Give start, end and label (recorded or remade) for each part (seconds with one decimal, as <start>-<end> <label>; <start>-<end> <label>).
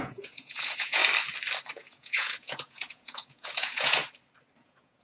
0.0-1.0 remade; 1.0-1.7 recorded; 1.7-4.0 remade; 4.0-4.6 recorded; 4.6-5.0 remade